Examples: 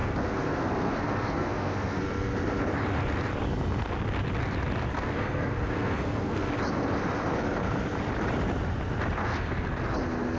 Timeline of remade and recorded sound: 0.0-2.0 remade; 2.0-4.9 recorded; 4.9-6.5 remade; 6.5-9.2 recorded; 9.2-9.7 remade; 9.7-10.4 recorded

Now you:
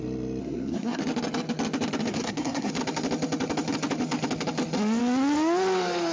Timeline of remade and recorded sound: 0.0-0.4 recorded; 0.4-1.0 remade; 1.0-2.1 recorded; 2.1-2.7 remade; 2.7-6.1 recorded

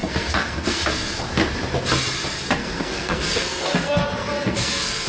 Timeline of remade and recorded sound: 0.0-1.2 remade; 1.2-2.6 recorded; 2.6-5.1 remade